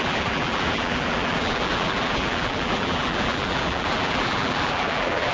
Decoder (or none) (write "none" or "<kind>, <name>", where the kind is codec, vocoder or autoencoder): vocoder, BigVGAN v2